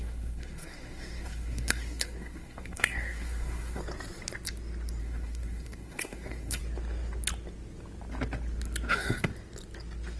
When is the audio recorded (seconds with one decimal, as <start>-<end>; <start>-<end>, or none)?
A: 3.8-5.0; 6.6-8.9; 9.3-10.2